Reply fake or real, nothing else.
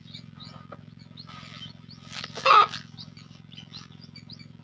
fake